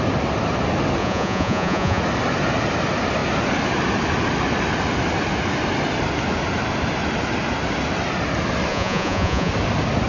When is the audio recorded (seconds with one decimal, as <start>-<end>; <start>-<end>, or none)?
0.0-1.0; 2.0-8.7; 9.5-10.1